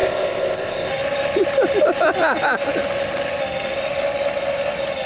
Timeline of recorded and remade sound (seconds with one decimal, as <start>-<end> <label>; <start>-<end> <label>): 0.0-0.9 remade; 0.9-5.1 recorded